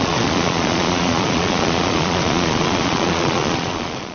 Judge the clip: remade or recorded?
remade